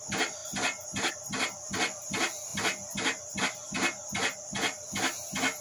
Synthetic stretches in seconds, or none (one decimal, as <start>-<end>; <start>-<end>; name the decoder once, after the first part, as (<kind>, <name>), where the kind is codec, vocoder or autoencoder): none